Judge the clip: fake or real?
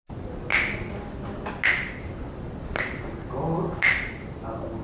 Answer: real